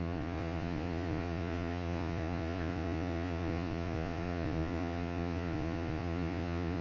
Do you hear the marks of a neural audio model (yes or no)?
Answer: yes